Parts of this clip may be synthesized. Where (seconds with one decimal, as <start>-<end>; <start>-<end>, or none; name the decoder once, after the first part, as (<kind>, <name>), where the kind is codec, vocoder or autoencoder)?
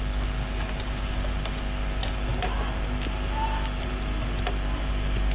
none